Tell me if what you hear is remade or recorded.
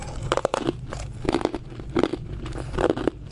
remade